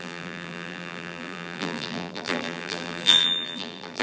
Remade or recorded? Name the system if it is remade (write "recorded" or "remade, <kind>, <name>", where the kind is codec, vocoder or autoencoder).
remade, vocoder, BigVGAN v2